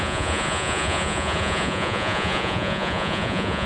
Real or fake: fake